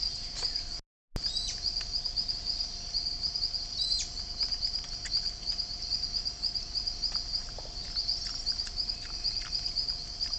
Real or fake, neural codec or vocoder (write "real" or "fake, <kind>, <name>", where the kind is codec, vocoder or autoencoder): real